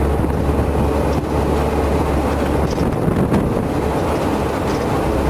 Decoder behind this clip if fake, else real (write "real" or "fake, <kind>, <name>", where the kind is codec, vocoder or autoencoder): real